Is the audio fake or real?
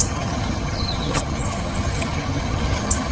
fake